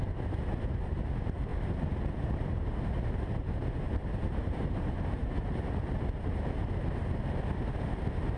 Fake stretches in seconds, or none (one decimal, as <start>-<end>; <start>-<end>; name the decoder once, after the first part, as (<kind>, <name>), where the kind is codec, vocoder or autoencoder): 1.5-5.7 (vocoder, BigVGAN v2)